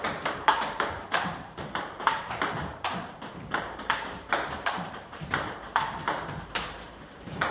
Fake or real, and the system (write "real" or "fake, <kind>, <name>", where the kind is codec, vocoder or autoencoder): fake, vocoder, BigVGAN v2